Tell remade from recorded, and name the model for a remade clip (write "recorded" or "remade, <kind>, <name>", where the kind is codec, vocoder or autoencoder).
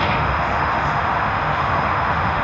remade, autoencoder, DAC-VAE